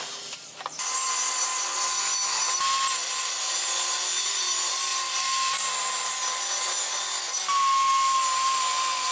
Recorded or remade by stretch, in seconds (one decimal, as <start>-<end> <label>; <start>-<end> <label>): 0.0-4.9 recorded; 4.9-6.0 remade; 6.0-9.1 recorded